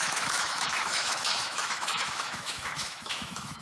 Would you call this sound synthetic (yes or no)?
yes